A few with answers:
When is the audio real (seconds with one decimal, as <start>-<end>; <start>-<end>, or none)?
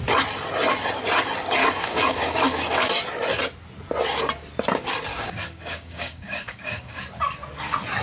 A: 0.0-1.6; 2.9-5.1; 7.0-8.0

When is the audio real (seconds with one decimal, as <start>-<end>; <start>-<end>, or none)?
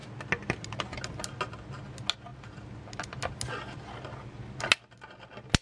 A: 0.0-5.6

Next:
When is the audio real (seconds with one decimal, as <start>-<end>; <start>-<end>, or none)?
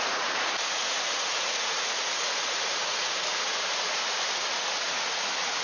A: none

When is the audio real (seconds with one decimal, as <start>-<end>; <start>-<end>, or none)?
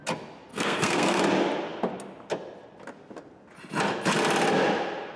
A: 0.0-0.5; 1.2-5.2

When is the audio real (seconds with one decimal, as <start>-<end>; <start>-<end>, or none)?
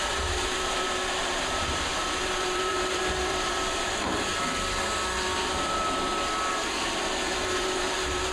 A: 4.3-5.5; 6.1-6.6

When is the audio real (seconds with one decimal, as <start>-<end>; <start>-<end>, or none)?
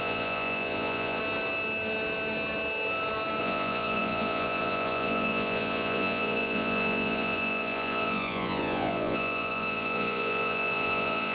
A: 1.2-3.4